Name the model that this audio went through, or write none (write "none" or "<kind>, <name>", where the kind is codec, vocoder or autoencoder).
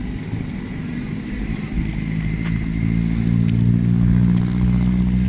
none